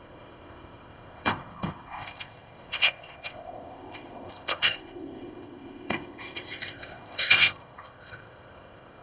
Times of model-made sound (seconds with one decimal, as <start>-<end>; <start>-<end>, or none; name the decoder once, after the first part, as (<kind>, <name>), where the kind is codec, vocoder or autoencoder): 0.0-9.0 (codec, ZipCodec)

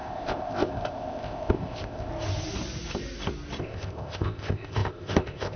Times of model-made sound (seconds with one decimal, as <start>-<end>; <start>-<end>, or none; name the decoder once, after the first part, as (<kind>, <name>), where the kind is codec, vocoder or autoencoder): 0.0-2.1 (codec, ZipCodec); 3.6-5.6

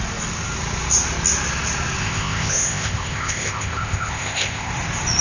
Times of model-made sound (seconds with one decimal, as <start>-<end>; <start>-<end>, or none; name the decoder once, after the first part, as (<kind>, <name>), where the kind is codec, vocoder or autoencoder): 2.0-4.7 (codec, ZipCodec)

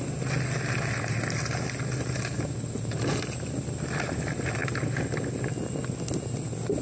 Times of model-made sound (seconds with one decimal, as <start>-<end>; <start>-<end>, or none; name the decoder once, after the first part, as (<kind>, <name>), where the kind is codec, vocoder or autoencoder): none

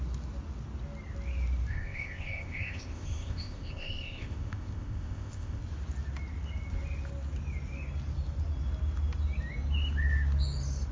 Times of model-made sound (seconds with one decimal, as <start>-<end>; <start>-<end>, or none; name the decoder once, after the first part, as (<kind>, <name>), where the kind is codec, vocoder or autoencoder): 1.7-5.6 (codec, ZipCodec)